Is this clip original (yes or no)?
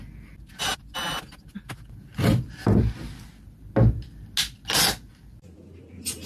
yes